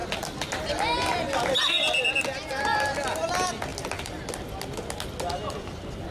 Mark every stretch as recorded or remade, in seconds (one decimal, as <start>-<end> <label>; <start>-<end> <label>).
0.0-6.1 recorded

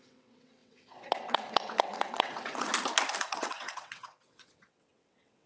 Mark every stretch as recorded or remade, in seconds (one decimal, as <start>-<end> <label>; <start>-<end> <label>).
0.0-2.7 remade; 2.7-3.2 recorded; 3.2-5.5 remade

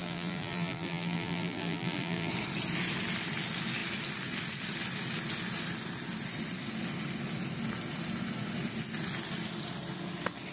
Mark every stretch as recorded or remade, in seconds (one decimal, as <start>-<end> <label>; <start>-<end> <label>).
0.0-2.3 remade; 2.3-10.5 recorded

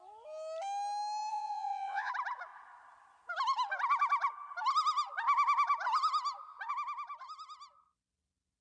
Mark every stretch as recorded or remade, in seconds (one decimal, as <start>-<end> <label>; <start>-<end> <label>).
0.0-1.3 recorded; 1.3-2.1 remade; 2.1-8.6 recorded

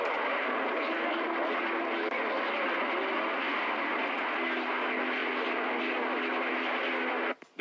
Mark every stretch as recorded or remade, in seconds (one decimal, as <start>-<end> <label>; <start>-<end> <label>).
0.0-7.6 recorded